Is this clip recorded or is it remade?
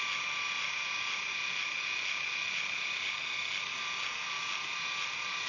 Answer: recorded